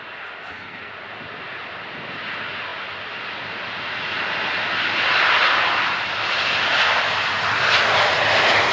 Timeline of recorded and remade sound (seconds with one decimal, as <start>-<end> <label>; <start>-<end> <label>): 0.0-0.4 recorded; 0.4-0.9 remade; 0.9-8.7 recorded